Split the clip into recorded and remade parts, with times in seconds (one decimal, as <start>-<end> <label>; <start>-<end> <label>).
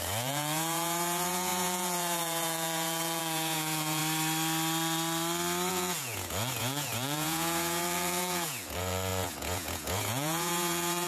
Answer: 0.0-4.0 remade; 4.0-5.7 recorded; 5.7-11.1 remade